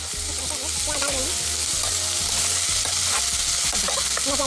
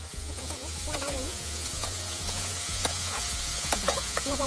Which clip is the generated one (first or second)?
second